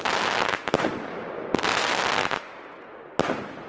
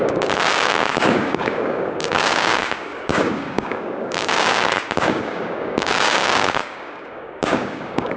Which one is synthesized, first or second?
second